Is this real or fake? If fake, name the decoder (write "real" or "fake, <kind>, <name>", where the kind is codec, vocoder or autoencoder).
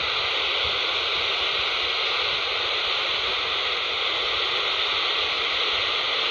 real